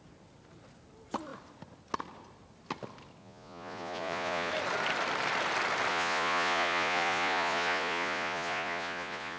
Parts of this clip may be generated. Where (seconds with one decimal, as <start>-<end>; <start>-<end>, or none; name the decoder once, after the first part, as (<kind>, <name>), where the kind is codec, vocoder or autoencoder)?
3.2-4.5 (vocoder, Vocos); 5.9-9.4